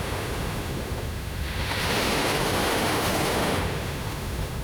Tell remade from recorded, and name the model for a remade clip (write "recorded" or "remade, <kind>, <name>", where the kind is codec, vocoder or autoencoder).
remade, autoencoder, DAC-VAE